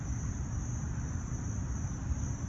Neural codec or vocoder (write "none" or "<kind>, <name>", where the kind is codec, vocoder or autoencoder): none